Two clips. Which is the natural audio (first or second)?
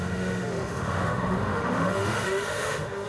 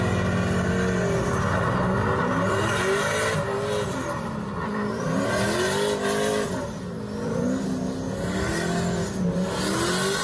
second